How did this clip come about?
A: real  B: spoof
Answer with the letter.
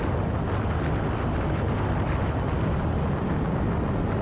A